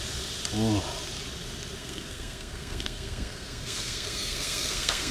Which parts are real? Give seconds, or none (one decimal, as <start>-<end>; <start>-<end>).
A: 0.0-1.8